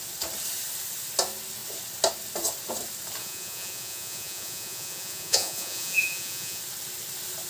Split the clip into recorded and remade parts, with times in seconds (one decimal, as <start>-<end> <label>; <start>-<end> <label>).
0.0-3.2 recorded; 3.2-6.6 remade; 6.6-7.5 recorded